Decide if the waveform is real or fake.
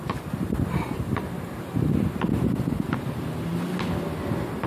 real